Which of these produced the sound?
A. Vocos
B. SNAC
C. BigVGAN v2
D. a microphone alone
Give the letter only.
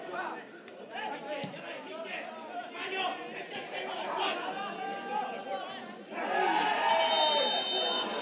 D